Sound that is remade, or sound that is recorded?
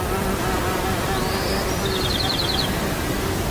recorded